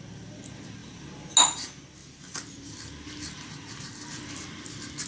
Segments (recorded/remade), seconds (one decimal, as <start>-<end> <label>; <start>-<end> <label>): 0.0-5.1 recorded